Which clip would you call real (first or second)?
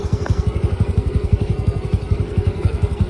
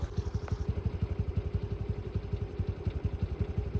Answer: second